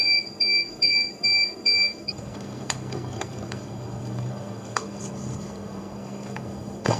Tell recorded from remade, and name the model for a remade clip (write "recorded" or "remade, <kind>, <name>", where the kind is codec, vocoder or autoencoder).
remade, codec, SNAC